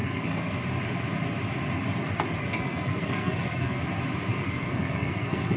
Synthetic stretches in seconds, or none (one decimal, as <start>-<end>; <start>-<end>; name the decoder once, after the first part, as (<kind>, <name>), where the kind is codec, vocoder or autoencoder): 0.0-0.6 (codec, SNAC); 2.4-3.8; 4.3-5.6